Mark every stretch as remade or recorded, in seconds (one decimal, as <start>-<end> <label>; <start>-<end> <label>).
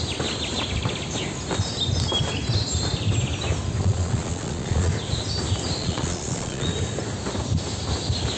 0.0-3.8 recorded; 3.8-4.9 remade; 4.9-5.8 recorded; 5.8-6.7 remade; 6.7-8.4 recorded